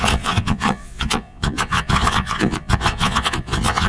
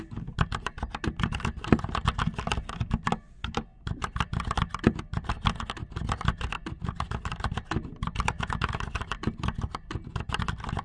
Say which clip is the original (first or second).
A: second